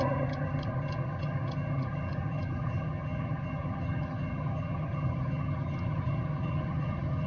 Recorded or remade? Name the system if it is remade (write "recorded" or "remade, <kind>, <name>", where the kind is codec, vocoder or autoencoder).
remade, vocoder, HiFi-GAN